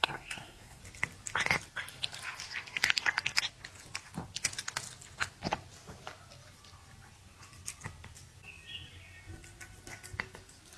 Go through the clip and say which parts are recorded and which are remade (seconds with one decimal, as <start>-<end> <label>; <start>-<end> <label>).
0.0-0.8 remade; 0.8-10.8 recorded